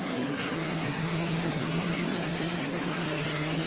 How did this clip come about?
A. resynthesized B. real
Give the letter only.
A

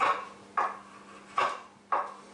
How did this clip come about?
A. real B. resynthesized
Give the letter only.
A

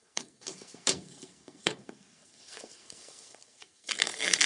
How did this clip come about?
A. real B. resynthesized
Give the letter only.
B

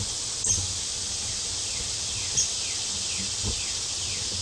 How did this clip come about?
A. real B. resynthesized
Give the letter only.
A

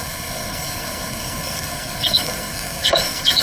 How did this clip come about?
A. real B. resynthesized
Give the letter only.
B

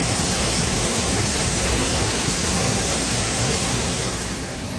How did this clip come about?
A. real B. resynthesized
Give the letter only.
B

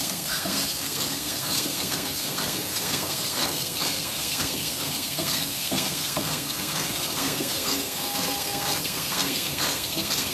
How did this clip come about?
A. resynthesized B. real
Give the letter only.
A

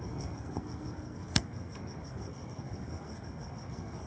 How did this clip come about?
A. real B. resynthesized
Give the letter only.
B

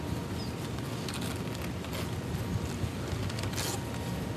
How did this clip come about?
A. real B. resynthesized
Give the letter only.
A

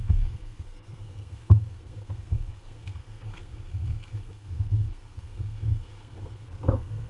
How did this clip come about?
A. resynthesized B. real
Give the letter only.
A